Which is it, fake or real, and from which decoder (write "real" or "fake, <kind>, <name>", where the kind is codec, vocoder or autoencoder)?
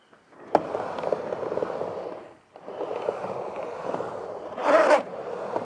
real